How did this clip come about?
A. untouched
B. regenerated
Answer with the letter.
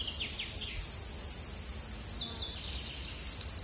A